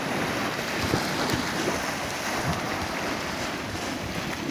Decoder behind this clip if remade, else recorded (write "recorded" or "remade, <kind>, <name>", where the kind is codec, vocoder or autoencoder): recorded